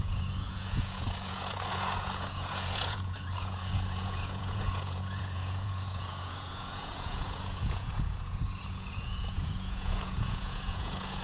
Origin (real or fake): fake